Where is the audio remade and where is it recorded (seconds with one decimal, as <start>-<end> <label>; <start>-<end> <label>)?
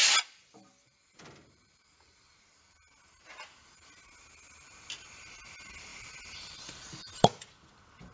0.0-2.8 remade; 2.8-5.9 recorded; 5.9-8.1 remade